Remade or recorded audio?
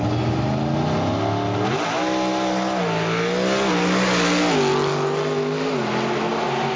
recorded